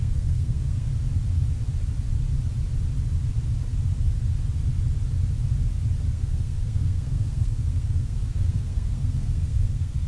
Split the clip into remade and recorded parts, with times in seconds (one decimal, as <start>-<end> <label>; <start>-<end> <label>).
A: 0.0-0.9 remade; 0.9-6.1 recorded; 6.1-10.1 remade